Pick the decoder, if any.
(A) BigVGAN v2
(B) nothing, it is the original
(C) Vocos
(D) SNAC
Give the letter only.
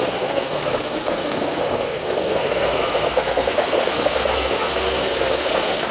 D